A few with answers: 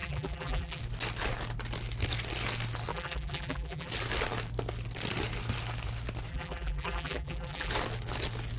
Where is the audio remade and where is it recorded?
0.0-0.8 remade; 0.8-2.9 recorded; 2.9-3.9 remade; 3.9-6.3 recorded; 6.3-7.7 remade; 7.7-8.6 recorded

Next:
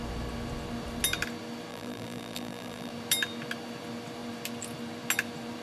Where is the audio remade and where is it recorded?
0.0-1.7 recorded; 1.7-2.9 remade; 2.9-5.6 recorded

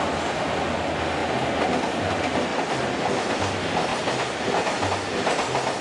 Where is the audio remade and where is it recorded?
0.0-1.2 recorded; 1.2-1.8 remade; 1.8-3.9 recorded; 3.9-4.9 remade; 4.9-5.8 recorded

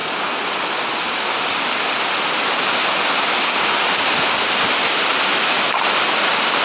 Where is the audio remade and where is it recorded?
0.0-1.2 recorded; 1.2-6.6 remade

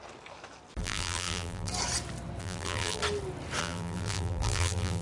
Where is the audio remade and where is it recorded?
0.0-0.8 recorded; 0.8-1.7 remade; 1.7-2.4 recorded; 2.4-3.0 remade; 3.0-3.6 recorded; 3.6-5.0 remade

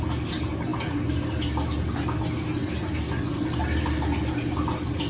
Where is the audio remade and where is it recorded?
0.0-5.1 recorded

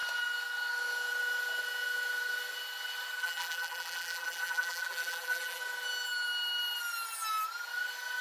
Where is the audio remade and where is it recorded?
0.0-3.2 recorded; 3.2-5.6 remade; 5.6-8.2 recorded